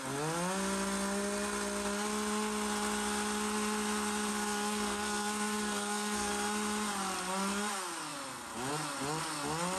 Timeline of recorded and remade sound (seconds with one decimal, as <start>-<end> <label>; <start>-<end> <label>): 0.0-4.3 recorded; 4.3-6.3 remade; 6.3-9.8 recorded